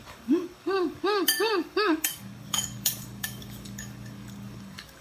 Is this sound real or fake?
fake